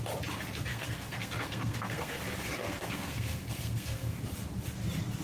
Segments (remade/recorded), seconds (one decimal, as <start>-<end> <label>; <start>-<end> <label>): 0.0-0.7 recorded; 0.7-2.2 remade; 2.2-2.6 recorded; 2.6-4.2 remade; 4.2-5.2 recorded